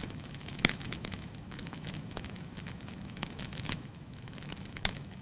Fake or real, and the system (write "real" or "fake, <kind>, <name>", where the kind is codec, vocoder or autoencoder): fake, autoencoder, DAC-VAE